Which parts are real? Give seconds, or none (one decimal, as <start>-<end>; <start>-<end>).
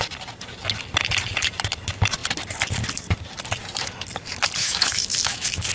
0.0-4.6